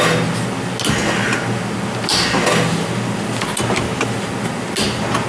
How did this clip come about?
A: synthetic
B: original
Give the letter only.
B